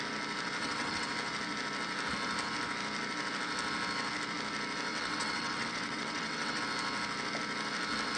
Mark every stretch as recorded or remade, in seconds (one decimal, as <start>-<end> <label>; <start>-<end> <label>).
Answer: 0.0-0.6 recorded; 0.6-1.1 remade; 1.1-4.9 recorded; 4.9-6.6 remade; 6.6-8.2 recorded